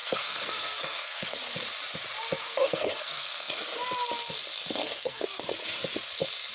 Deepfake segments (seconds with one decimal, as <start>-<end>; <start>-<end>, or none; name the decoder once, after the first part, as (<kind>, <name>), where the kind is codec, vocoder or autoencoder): 0.0-1.4 (codec, SNAC); 2.4-3.5; 4.8-5.4